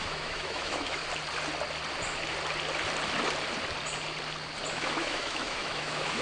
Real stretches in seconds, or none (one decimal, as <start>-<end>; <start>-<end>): 1.0-4.7

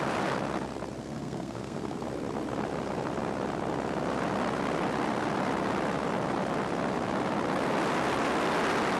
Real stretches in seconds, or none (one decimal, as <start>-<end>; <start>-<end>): 0.0-1.0; 2.0-9.0

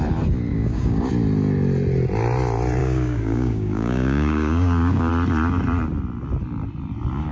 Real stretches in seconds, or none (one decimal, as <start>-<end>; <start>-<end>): 0.0-0.5; 1.1-2.8; 5.1-7.3

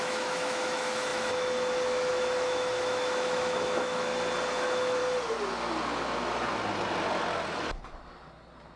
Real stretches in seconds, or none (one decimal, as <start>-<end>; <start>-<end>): 4.1-4.6; 5.0-8.8

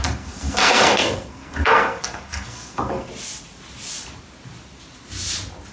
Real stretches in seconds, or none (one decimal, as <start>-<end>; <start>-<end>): 3.1-5.7

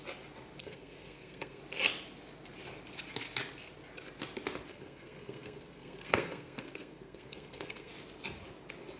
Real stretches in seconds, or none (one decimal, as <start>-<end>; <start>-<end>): 0.0-0.6; 1.6-4.7; 7.9-9.0